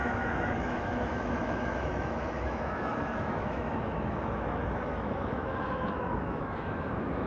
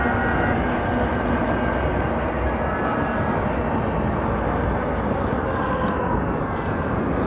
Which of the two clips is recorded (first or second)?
second